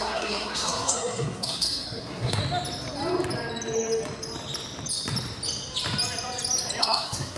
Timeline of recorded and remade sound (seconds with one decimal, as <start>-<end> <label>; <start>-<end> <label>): 0.0-2.4 remade; 2.4-6.8 recorded; 6.8-7.4 remade